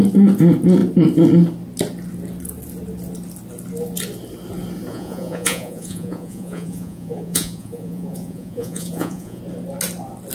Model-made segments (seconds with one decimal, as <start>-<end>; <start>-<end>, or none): 4.9-9.4